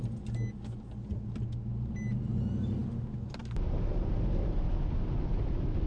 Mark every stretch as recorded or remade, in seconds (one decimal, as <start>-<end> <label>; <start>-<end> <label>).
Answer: 0.0-5.9 recorded